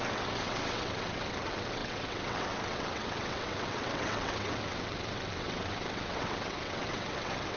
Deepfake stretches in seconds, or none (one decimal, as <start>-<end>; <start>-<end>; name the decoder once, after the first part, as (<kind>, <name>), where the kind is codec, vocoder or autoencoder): 0.0-7.6 (vocoder, WaveNeXt)